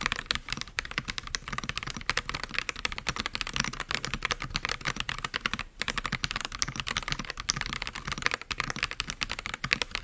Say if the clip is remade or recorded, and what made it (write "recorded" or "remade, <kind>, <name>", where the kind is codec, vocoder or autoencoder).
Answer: recorded